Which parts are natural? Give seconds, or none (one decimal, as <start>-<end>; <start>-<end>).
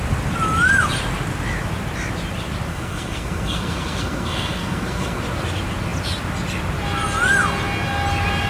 0.0-2.7; 5.2-8.5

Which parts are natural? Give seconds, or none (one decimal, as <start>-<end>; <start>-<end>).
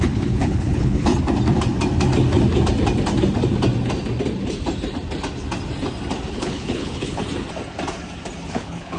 1.1-6.3; 7.2-8.5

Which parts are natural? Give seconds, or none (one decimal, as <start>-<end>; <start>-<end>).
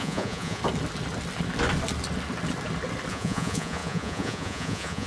0.6-3.1